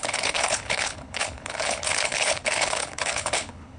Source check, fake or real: fake